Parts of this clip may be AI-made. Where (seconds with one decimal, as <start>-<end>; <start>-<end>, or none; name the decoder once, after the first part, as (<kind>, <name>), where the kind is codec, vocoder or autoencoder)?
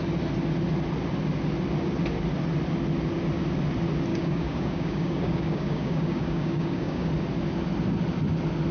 4.1-7.1 (codec, DAC)